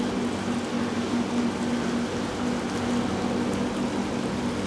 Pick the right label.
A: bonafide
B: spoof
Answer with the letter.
A